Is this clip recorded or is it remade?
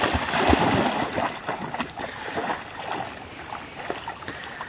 recorded